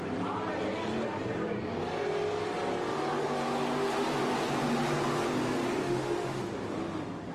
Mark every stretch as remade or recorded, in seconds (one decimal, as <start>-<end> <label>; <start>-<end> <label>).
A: 0.0-5.7 recorded; 5.7-6.4 remade; 6.4-7.3 recorded